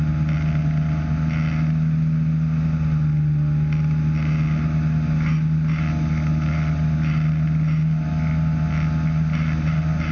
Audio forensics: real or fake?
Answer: real